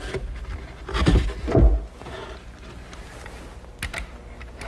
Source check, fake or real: real